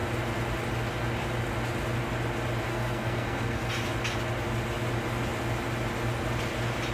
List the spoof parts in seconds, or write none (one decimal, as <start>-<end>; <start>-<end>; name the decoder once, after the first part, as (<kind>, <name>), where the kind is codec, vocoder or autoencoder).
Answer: 2.7-3.7 (codec, SNAC)